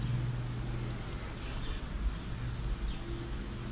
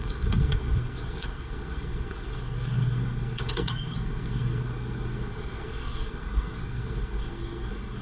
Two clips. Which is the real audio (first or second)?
first